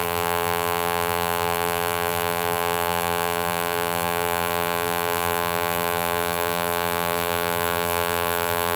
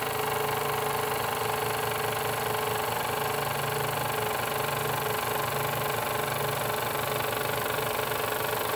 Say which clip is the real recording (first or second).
second